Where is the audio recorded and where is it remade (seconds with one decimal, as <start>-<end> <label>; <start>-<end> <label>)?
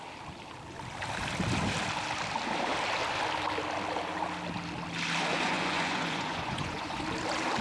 0.0-5.3 recorded; 5.3-7.0 remade; 7.0-7.6 recorded